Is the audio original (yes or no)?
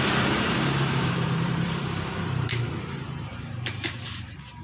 no